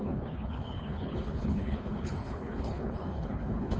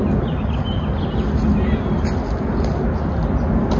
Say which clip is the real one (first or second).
second